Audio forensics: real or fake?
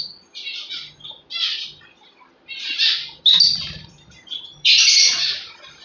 real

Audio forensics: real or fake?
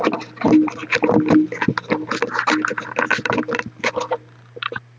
real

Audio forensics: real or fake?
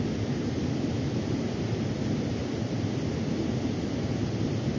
real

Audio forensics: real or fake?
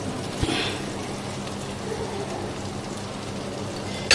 real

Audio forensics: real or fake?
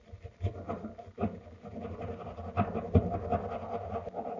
real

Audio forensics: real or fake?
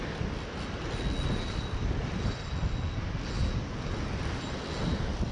real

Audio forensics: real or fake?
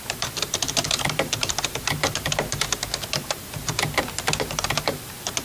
fake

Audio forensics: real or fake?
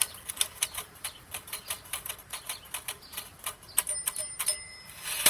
fake